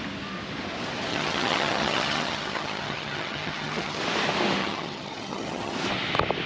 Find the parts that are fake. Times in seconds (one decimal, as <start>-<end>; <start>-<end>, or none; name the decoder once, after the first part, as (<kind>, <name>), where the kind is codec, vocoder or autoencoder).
1.1-4.0 (vocoder, HiFi-GAN); 4.6-5.7